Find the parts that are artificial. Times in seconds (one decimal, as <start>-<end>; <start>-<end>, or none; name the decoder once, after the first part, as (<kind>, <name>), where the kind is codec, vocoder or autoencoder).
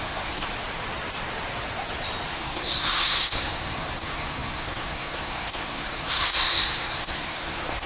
0.0-0.5 (codec, SNAC); 2.3-7.9